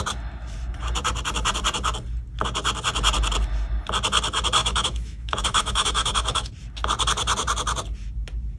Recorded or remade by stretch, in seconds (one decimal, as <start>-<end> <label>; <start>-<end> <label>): 0.0-4.6 recorded; 4.6-6.5 remade; 6.5-8.6 recorded